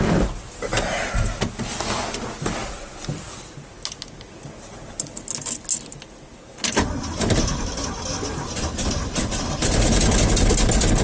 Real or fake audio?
real